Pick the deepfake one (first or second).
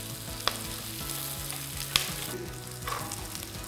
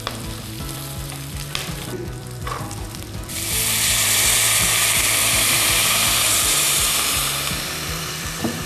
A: second